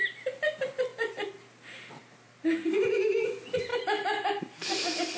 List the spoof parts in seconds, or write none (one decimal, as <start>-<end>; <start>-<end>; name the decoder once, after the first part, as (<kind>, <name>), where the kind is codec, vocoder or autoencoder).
3.7-4.4 (vocoder, BigVGAN v2)